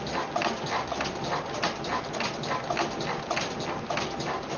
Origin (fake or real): real